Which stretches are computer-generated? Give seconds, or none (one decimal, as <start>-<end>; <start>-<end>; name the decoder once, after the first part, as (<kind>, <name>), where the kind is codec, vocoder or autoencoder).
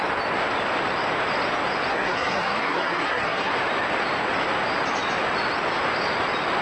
1.9-3.5 (codec, SNAC)